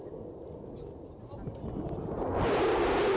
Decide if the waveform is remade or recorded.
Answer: recorded